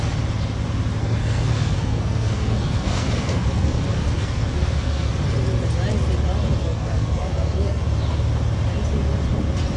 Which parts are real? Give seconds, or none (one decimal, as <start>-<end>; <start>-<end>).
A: 0.0-1.0; 5.1-6.6; 7.8-9.8